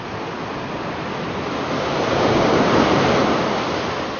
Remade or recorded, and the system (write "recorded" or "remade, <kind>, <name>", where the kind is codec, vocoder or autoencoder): recorded